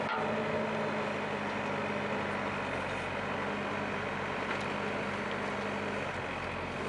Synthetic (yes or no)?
no